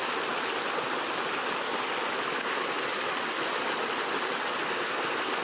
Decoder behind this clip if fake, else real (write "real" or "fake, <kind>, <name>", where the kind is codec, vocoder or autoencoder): real